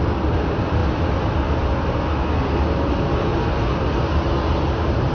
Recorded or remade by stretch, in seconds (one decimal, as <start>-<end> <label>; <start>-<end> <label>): 0.0-3.3 recorded; 3.3-4.0 remade; 4.0-5.1 recorded